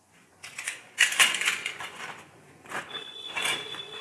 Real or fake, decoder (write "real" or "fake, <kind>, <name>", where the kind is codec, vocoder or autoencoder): fake, vocoder, Vocos